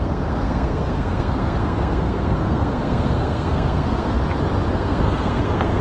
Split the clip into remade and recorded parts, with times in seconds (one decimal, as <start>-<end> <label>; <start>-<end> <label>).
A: 0.0-4.2 remade; 4.2-4.7 recorded; 4.7-5.8 remade